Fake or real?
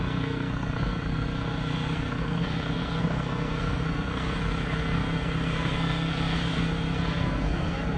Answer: fake